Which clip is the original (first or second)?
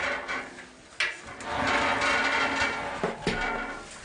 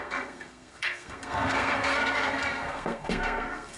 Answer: first